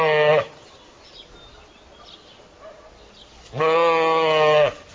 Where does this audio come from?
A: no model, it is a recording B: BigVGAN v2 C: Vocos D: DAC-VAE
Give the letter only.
A